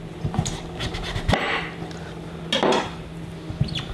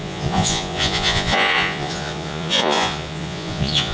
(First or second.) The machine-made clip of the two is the second